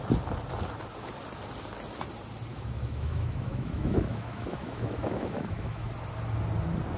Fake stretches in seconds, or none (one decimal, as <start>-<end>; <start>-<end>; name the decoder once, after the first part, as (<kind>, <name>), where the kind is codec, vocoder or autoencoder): 2.5-5.9 (autoencoder, DAC-VAE)